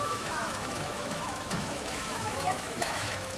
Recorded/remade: remade